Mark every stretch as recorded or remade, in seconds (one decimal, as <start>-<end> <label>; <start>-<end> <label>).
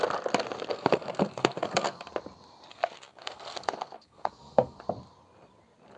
0.0-0.7 recorded; 0.7-2.0 remade; 2.0-2.7 recorded; 2.7-4.8 remade; 4.8-6.0 recorded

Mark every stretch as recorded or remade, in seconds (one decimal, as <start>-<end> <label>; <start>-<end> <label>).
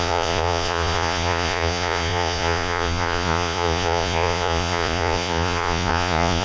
0.0-6.4 remade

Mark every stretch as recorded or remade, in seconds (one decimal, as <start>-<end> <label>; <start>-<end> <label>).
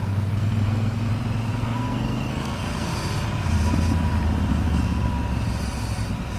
0.0-1.1 remade; 1.1-1.5 recorded; 1.5-2.9 remade; 2.9-4.5 recorded; 4.5-5.1 remade; 5.1-6.4 recorded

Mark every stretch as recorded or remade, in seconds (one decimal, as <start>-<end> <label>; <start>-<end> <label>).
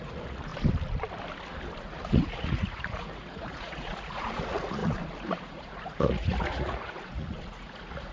0.0-0.5 remade; 0.5-1.8 recorded; 1.8-8.1 remade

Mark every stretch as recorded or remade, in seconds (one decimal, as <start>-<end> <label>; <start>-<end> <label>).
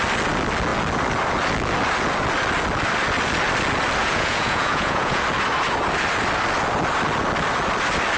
0.0-4.0 recorded; 4.0-5.2 remade; 5.2-8.2 recorded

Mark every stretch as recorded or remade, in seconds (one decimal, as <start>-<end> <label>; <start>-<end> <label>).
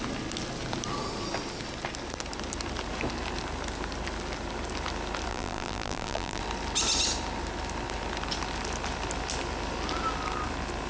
0.0-5.3 recorded; 5.3-6.4 remade; 6.4-10.9 recorded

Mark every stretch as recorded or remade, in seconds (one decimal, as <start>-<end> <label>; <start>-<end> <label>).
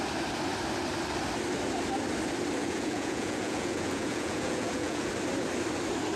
0.0-2.6 recorded; 2.6-5.1 remade; 5.1-6.2 recorded